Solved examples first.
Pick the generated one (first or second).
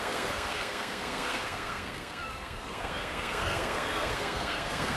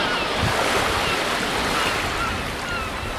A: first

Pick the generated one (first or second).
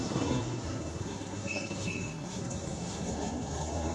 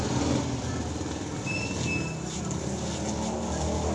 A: first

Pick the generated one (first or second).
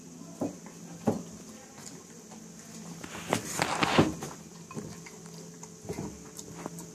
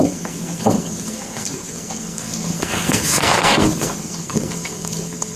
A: second